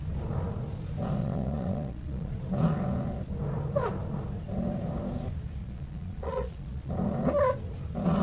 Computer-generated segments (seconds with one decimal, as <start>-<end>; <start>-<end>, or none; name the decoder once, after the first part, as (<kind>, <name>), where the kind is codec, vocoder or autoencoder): 1.2-2.3 (vocoder, Vocos); 5.6-6.9